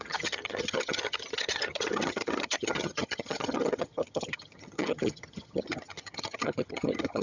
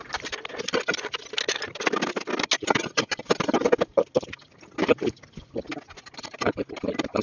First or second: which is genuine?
second